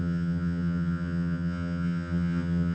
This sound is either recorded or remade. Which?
remade